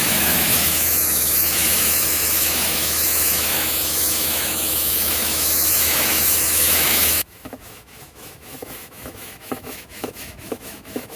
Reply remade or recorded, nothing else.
remade